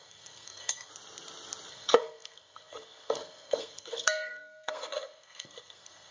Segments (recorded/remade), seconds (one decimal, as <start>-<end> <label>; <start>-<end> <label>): 0.0-0.9 remade; 0.9-1.7 recorded; 1.7-6.1 remade